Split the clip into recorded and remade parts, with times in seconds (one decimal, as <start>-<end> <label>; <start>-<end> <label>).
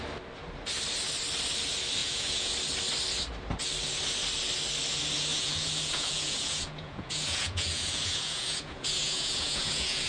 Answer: 0.0-2.0 recorded; 2.0-2.5 remade; 2.5-5.3 recorded; 5.3-10.1 remade